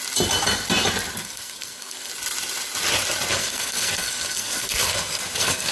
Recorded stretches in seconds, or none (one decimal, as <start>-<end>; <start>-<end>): 0.0-1.2; 2.1-3.3